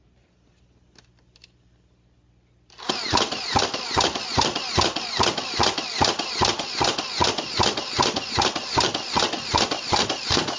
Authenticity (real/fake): real